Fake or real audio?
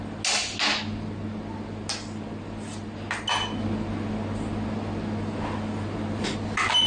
real